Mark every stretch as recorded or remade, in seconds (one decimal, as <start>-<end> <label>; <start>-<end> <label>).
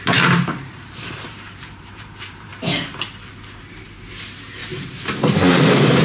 0.0-2.5 remade; 2.5-4.1 recorded; 4.1-4.6 remade; 4.6-5.5 recorded; 5.5-6.0 remade